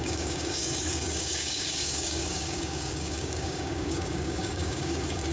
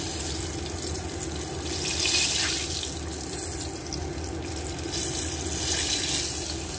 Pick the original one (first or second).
second